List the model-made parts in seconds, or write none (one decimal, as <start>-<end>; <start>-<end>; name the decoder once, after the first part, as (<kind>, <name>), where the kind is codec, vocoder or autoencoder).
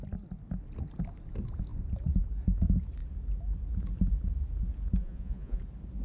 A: 5.0-5.6 (vocoder, Vocos)